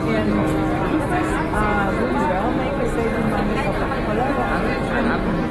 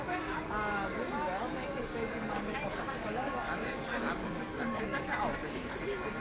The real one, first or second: first